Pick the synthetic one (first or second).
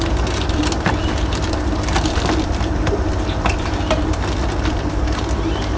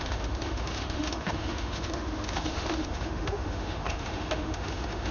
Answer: second